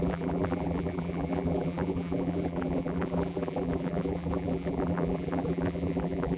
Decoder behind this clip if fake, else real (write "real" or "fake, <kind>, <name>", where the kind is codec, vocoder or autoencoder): fake, vocoder, BigVGAN v2